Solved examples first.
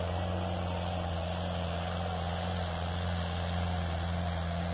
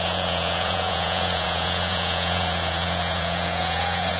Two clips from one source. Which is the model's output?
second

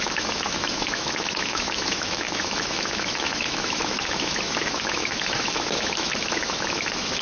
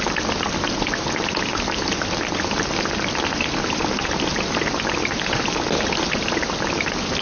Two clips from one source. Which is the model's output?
first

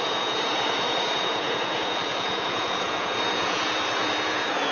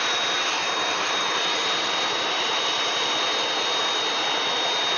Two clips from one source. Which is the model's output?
first